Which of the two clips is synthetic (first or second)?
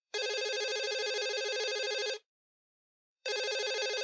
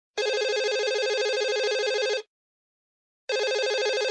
first